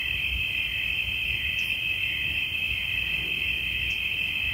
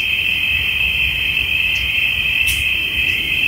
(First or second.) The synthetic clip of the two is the second